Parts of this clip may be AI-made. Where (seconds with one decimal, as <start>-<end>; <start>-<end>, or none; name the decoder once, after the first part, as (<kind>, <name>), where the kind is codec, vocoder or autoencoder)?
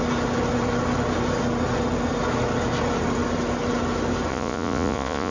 4.3-5.3 (vocoder, Vocos)